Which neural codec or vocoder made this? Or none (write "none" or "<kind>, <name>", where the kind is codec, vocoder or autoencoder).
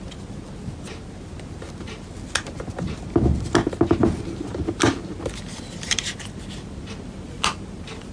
none